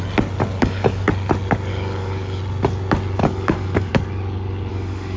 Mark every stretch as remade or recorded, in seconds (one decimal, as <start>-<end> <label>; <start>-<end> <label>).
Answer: 0.0-0.6 recorded; 0.6-1.1 remade; 1.1-1.7 recorded; 1.7-2.4 remade; 2.4-3.2 recorded; 3.2-3.9 remade; 3.9-4.7 recorded; 4.7-5.2 remade